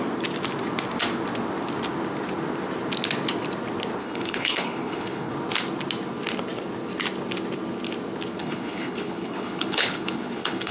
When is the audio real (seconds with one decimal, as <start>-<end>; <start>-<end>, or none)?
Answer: 0.0-4.0; 5.3-8.4